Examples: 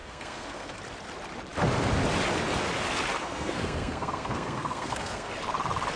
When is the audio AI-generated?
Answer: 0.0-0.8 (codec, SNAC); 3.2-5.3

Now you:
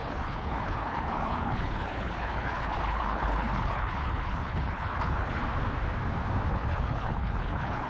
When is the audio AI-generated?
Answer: 0.0-5.4 (codec, HILCodec); 6.5-7.9

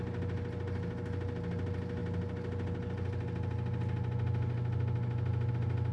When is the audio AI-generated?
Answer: none

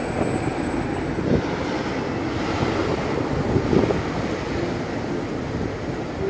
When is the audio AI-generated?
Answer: none

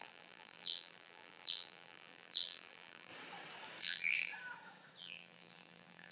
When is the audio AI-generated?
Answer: 0.0-3.1 (vocoder, BigVGAN v2); 3.8-4.3; 5.0-6.1